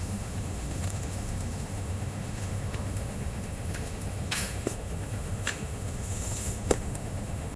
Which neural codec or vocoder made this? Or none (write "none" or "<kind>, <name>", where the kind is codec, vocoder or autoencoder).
autoencoder, DAC-VAE